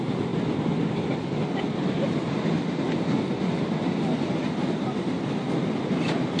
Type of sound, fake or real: real